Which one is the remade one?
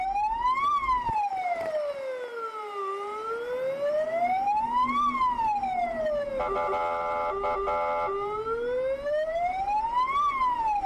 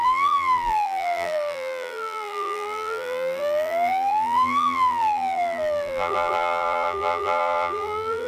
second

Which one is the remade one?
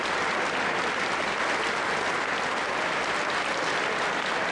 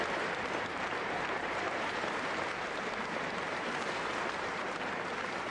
second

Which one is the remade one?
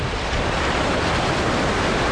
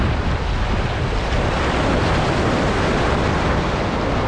first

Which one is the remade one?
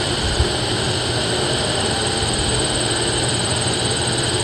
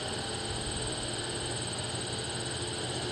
first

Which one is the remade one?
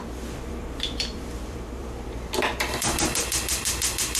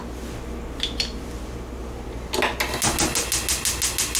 first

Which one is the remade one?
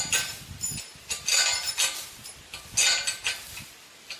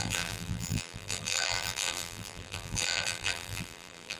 second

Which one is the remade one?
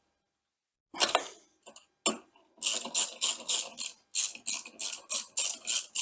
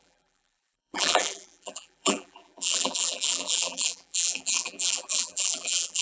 second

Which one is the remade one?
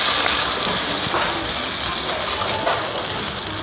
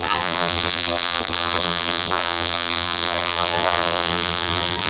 second